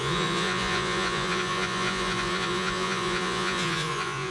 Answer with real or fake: fake